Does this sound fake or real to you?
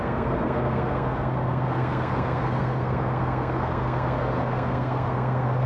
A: fake